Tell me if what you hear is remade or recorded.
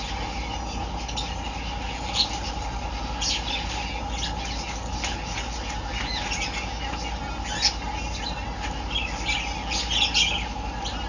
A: recorded